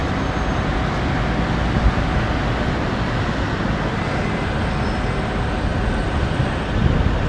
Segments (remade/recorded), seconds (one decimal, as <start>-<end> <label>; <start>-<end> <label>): 0.0-7.3 recorded